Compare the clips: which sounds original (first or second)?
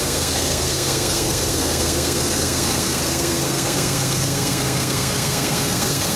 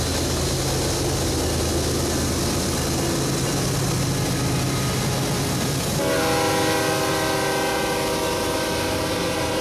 second